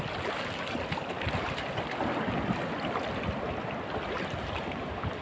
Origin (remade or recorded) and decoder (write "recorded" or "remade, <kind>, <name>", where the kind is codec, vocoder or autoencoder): recorded